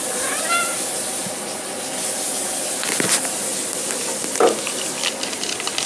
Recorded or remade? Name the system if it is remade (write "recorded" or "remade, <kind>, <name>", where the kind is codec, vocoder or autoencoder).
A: recorded